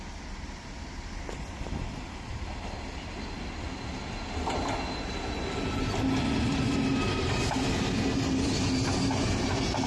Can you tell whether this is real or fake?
real